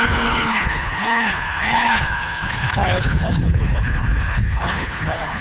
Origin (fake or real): fake